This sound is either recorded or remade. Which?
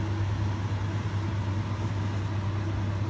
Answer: recorded